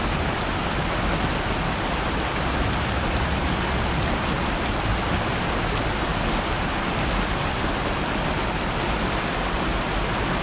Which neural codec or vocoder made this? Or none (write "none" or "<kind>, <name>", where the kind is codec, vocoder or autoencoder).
none